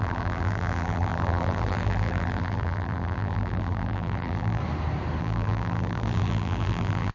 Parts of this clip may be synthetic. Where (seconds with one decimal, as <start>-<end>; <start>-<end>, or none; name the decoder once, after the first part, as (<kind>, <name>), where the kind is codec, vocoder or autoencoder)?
0.0-4.6 (vocoder, BigVGAN v2); 5.2-7.1